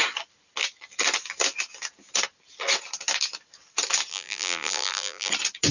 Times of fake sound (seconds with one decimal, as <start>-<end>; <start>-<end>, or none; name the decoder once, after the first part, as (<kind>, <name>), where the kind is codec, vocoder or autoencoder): 4.1-5.3 (vocoder, BigVGAN v2)